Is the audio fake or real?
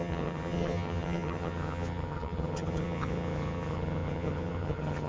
fake